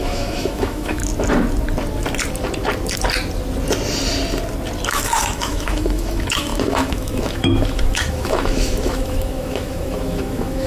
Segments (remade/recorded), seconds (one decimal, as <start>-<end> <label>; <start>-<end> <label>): 0.0-1.0 remade; 1.0-4.9 recorded; 4.9-10.7 remade